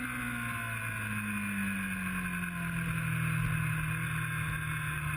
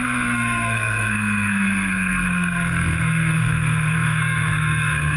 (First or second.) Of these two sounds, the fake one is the second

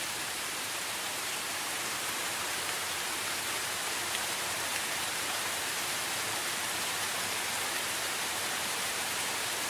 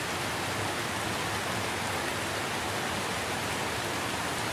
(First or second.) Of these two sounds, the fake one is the first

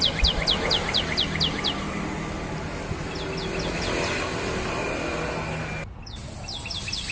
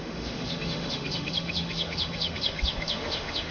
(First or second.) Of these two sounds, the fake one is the second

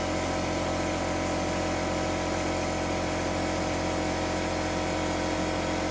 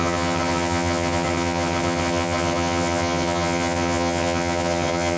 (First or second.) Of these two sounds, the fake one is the second